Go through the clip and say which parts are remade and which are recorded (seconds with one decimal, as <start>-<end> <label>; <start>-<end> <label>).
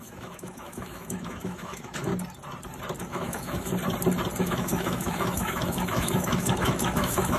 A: 0.0-2.1 remade; 2.1-3.0 recorded; 3.0-3.7 remade; 3.7-4.4 recorded; 4.4-7.4 remade